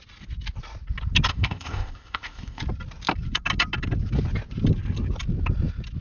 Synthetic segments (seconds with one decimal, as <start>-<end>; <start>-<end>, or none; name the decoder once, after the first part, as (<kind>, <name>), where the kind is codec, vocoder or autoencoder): 1.3-2.6 (codec, ZipCodec)

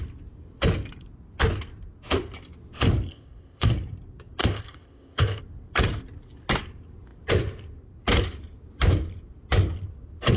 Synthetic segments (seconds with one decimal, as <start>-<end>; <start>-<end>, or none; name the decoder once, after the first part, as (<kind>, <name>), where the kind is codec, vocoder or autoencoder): 3.1-3.7 (codec, ZipCodec); 4.4-5.4

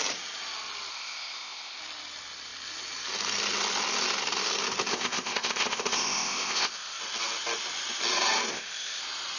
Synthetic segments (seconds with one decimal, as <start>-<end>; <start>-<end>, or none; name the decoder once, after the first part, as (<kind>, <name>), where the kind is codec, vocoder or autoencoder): 0.9-1.8 (codec, ZipCodec); 4.9-7.0; 8.5-9.0

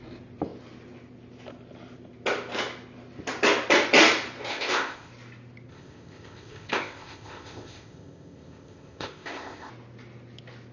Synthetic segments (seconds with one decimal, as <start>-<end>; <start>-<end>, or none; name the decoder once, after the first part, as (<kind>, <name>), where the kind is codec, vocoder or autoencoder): 4.5-5.1 (codec, ZipCodec); 5.7-9.7

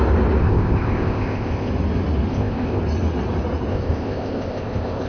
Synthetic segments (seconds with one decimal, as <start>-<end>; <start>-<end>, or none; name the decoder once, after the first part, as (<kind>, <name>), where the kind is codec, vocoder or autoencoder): 0.4-1.7 (codec, ZipCodec); 2.3-2.8; 3.7-5.1